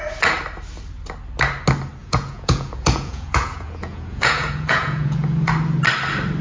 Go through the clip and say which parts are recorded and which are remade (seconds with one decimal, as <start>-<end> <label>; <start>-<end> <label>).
0.0-2.0 recorded; 2.0-5.5 remade; 5.5-6.4 recorded

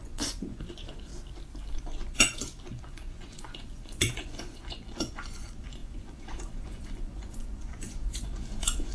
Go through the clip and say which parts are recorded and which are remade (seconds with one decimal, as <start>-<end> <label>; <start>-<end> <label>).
0.0-1.1 remade; 1.1-1.8 recorded; 1.8-8.9 remade

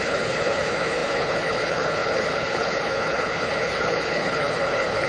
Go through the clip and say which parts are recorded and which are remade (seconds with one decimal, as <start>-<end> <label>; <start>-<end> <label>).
0.0-5.1 remade

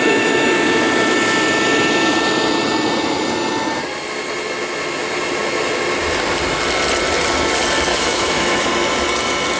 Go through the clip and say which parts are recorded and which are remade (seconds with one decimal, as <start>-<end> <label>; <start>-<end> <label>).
0.0-7.9 recorded; 7.9-8.7 remade; 8.7-9.6 recorded

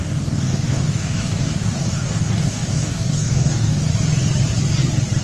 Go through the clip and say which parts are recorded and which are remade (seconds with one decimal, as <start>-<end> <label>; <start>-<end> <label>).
0.0-3.9 remade; 3.9-5.2 recorded

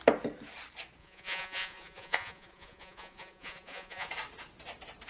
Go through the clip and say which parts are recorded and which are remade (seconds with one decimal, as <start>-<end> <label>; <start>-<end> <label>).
0.0-1.0 recorded; 1.0-4.1 remade; 4.1-5.1 recorded

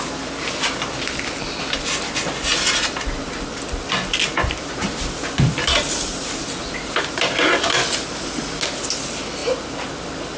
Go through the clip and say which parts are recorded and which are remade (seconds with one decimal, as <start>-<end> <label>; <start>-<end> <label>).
0.0-10.4 recorded

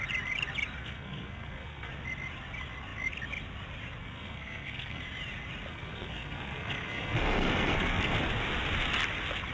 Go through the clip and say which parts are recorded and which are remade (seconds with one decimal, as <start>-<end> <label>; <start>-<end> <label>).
0.0-0.8 recorded; 0.8-1.9 remade; 1.9-4.0 recorded; 4.0-5.0 remade; 5.0-5.7 recorded; 5.7-8.1 remade; 8.1-9.5 recorded